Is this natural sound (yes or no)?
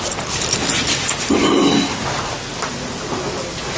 yes